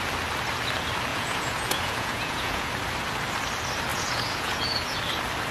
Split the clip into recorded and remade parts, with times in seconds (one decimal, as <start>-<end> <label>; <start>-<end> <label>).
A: 0.0-1.1 recorded; 1.1-2.7 remade; 2.7-3.9 recorded; 3.9-5.0 remade; 5.0-5.5 recorded